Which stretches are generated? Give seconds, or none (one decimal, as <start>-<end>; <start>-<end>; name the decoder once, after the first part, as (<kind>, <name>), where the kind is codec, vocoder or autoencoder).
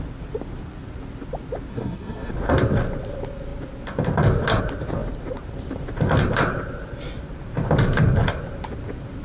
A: 1.7-2.3 (codec, SNAC)